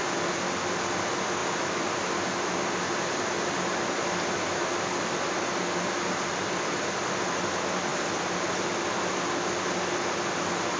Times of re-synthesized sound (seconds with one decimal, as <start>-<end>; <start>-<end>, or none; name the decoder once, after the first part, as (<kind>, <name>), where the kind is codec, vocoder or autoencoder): none